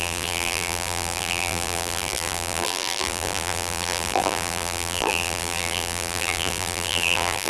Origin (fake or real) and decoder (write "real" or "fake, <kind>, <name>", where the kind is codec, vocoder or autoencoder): fake, vocoder, BigVGAN v2